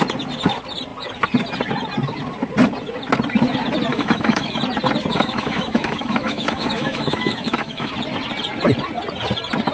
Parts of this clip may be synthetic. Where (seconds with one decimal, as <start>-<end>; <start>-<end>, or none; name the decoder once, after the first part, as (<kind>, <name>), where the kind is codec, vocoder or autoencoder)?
3.9-4.6 (autoencoder, DAC-VAE); 5.1-7.9